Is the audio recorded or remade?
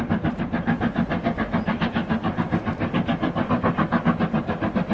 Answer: recorded